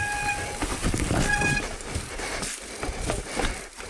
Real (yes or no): yes